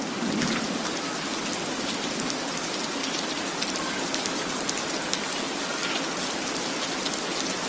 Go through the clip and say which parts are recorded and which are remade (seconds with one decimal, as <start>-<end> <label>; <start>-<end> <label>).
0.0-3.0 recorded; 3.0-4.6 remade; 4.6-7.7 recorded